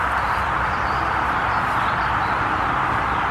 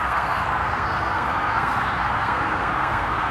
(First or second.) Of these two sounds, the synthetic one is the second